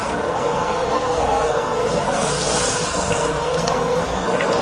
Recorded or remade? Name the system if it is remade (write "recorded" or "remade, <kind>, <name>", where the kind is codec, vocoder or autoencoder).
remade, codec, SNAC